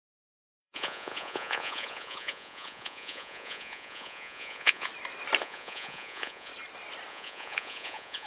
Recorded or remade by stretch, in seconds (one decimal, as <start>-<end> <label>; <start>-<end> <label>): 0.0-4.9 remade; 4.9-5.4 recorded; 5.4-6.5 remade; 6.5-7.1 recorded; 7.1-8.3 remade